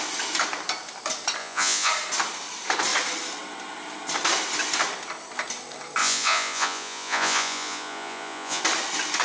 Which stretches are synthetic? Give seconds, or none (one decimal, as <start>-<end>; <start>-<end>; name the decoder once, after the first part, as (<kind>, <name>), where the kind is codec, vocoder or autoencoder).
1.4-1.9 (vocoder, Vocos); 6.0-8.6